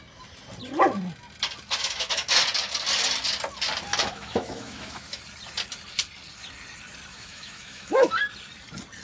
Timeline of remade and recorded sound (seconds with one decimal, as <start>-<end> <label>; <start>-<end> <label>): 0.0-1.8 recorded; 1.8-2.3 remade; 2.3-4.0 recorded; 4.0-5.2 remade; 5.2-7.1 recorded; 7.1-8.1 remade; 8.1-9.0 recorded